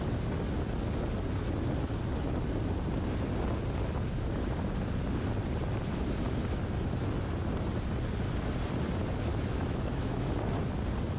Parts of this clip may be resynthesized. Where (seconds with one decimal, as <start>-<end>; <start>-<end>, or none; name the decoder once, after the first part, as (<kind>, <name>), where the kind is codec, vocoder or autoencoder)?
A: 9.3-10.3 (autoencoder, DAC-VAE)